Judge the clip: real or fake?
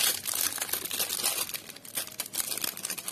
real